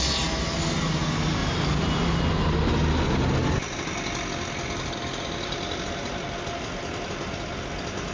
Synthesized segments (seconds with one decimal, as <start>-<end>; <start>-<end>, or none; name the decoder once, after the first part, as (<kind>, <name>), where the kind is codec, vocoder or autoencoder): 1.4-2.2 (vocoder, BigVGAN v2)